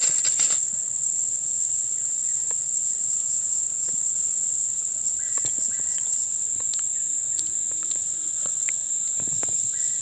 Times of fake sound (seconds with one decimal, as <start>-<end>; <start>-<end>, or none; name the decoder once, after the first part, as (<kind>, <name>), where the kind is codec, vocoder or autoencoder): 0.0-6.5 (vocoder, WaveNeXt); 7.8-8.9; 9.6-10.0

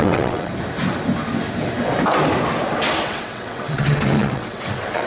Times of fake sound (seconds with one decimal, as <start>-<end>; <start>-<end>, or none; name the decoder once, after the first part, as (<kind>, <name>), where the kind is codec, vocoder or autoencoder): 0.0-0.5 (vocoder, WaveNeXt); 3.0-5.1

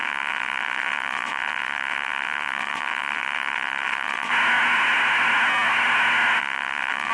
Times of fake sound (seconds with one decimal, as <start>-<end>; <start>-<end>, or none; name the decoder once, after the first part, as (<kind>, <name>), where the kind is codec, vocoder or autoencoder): 0.0-4.3 (vocoder, WaveNeXt); 6.4-7.1